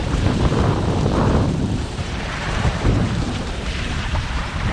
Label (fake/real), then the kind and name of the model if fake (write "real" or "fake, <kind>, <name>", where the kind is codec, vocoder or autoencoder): fake, vocoder, BigVGAN v2